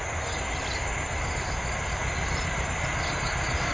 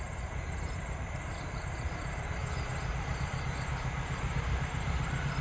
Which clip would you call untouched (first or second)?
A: first